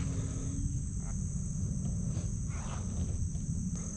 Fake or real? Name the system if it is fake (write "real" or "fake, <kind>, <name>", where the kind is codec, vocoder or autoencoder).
real